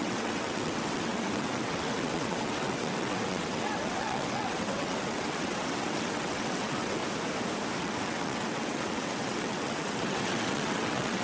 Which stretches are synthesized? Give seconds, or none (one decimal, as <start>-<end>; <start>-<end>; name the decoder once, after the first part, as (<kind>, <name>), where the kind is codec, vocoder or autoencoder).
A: 0.0-7.0 (vocoder, WaveNeXt); 7.8-11.2